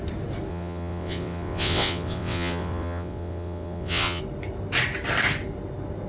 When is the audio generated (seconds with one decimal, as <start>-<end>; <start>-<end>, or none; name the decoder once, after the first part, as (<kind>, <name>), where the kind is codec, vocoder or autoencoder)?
0.5-4.2 (vocoder, WaveNeXt)

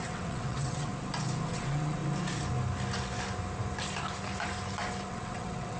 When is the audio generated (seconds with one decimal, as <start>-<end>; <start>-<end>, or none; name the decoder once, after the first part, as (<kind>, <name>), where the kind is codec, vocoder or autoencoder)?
0.0-0.9 (vocoder, WaveNeXt); 1.5-2.0; 5.1-5.8